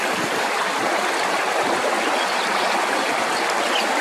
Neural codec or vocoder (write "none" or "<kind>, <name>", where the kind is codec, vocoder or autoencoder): none